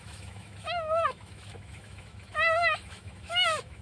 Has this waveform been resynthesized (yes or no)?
yes